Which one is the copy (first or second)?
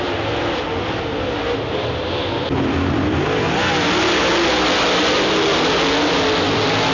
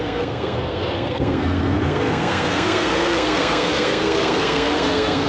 second